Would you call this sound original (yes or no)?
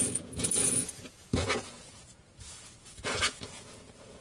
no